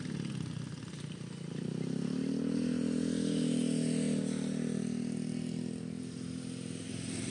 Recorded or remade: recorded